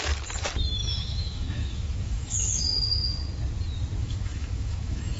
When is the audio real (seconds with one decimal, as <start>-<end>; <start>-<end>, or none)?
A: 0.0-0.8; 2.6-4.0